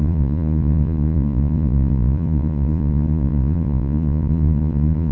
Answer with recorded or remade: remade